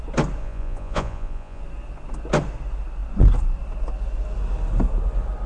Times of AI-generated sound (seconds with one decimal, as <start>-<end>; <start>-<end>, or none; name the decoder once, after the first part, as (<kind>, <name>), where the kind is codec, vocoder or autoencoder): 0.4-1.6 (vocoder, Vocos)